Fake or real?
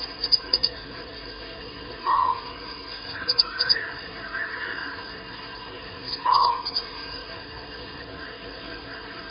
fake